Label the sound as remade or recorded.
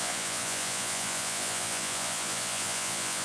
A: remade